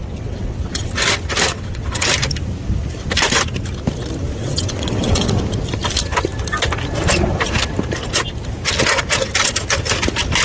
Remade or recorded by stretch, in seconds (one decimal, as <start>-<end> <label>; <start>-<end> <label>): 0.0-1.0 remade; 1.0-1.5 recorded; 1.5-2.1 remade; 2.1-4.4 recorded; 4.4-5.4 remade; 5.4-10.4 recorded